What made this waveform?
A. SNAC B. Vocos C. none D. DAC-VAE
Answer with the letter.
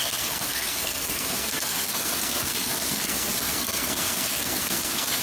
A